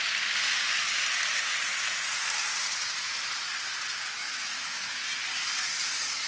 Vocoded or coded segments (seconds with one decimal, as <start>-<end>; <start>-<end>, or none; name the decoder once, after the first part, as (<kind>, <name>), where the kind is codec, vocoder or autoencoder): 4.2-5.0 (autoencoder, DAC-VAE)